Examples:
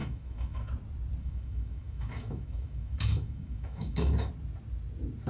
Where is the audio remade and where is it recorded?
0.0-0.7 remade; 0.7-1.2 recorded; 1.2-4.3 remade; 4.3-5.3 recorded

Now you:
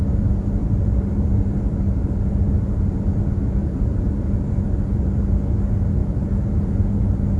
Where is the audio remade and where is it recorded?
0.0-0.6 recorded; 0.6-2.3 remade; 2.3-3.6 recorded; 3.6-5.4 remade; 5.4-6.0 recorded; 6.0-7.0 remade; 7.0-7.4 recorded

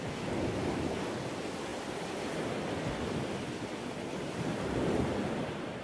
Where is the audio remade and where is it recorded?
0.0-5.8 recorded